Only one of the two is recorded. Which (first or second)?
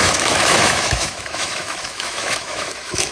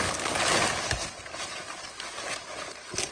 second